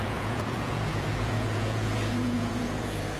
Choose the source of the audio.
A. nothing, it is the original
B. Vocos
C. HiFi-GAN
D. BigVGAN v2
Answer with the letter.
B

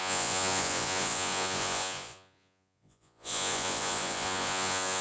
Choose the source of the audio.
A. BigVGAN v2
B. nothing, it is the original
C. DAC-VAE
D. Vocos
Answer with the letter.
D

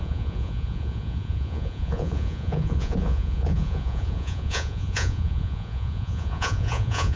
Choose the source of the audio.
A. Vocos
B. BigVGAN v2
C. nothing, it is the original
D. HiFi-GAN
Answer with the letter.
A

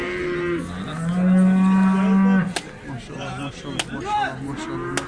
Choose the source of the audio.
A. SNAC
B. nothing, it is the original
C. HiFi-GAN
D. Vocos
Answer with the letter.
B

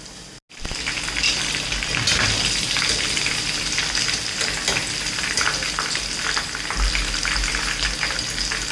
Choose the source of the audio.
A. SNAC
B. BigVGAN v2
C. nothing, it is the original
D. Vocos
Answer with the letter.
C